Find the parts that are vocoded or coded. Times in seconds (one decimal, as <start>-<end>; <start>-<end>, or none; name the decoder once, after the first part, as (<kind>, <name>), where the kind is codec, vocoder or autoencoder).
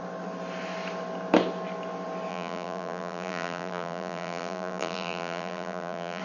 2.3-6.2 (vocoder, BigVGAN v2)